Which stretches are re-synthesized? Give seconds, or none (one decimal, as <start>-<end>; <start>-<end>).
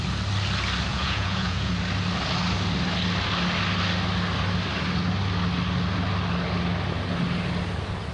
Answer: 0.9-1.7